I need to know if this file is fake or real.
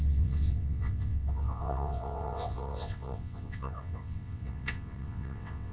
fake